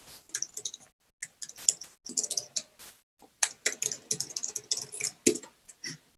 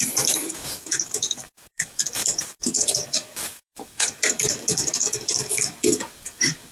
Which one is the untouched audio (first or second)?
first